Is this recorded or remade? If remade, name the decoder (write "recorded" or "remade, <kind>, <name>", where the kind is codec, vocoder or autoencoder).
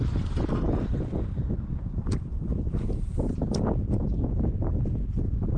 recorded